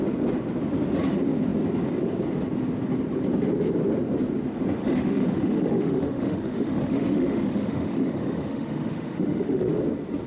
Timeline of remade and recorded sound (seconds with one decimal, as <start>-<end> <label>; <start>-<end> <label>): 0.0-4.8 recorded; 4.8-9.7 remade; 9.7-10.3 recorded